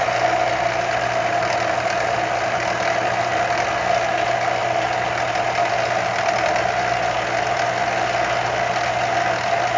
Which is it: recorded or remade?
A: recorded